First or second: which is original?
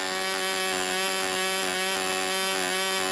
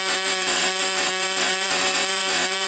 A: first